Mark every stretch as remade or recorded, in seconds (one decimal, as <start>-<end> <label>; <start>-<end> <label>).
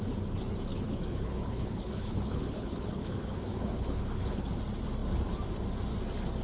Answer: 0.0-0.7 recorded; 0.7-4.5 remade; 4.5-6.4 recorded